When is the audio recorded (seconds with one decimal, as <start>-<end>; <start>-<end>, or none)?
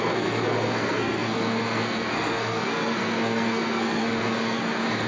none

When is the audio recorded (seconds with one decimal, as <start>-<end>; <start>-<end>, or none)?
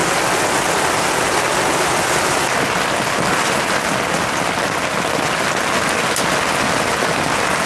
0.0-7.7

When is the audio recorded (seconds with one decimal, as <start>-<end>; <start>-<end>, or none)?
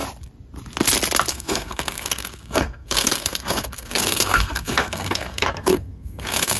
0.0-1.3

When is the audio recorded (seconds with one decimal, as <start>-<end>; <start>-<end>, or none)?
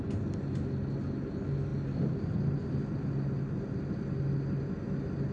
0.0-5.3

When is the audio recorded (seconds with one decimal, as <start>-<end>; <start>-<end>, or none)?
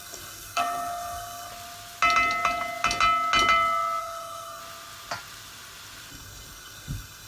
1.5-4.0; 4.6-6.1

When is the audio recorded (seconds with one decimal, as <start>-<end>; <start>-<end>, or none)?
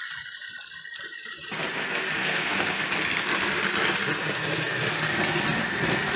0.0-2.2; 2.8-6.2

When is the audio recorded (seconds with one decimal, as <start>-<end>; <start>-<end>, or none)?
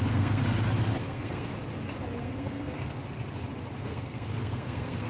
0.4-1.0; 1.5-2.2; 3.0-3.8